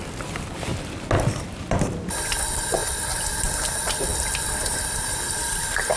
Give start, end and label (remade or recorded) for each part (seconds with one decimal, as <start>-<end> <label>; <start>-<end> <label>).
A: 0.0-0.7 remade; 0.7-2.3 recorded; 2.3-2.8 remade; 2.8-3.3 recorded; 3.3-6.0 remade